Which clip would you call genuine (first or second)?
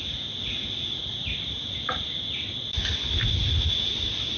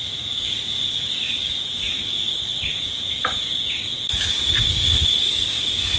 first